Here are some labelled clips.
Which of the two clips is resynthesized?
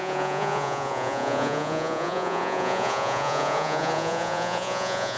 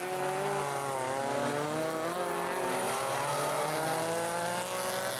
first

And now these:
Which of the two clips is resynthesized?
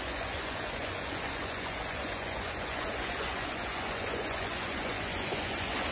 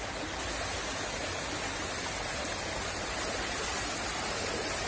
first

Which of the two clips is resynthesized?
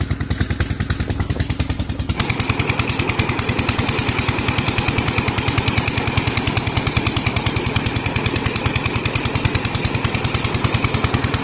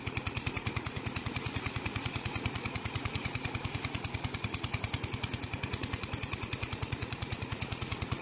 second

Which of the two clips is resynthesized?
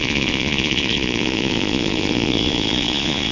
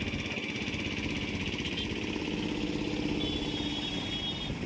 first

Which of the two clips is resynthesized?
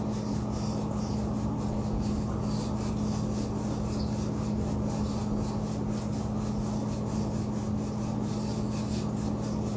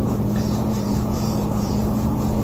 second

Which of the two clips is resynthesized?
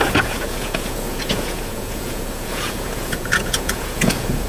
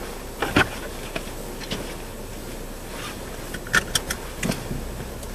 first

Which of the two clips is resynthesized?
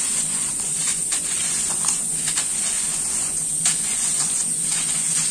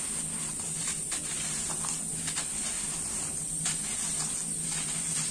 first